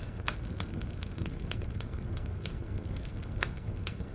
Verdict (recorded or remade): remade